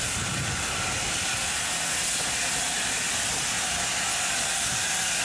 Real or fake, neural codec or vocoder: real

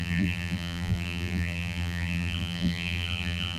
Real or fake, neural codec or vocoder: fake, vocoder, BigVGAN v2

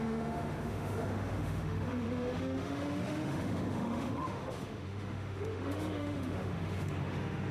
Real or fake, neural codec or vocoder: fake, autoencoder, DAC-VAE